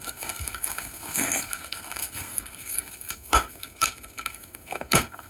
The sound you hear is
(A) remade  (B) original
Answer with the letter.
A